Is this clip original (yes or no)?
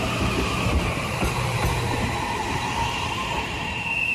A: no